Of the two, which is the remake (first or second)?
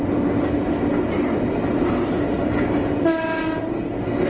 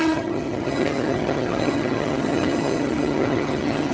second